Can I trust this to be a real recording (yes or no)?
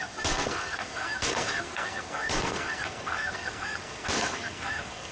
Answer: no